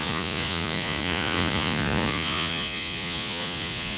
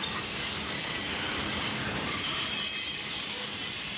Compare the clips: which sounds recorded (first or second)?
second